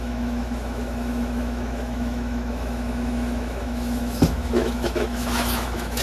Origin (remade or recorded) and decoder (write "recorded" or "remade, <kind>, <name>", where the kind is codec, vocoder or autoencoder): remade, autoencoder, DAC-VAE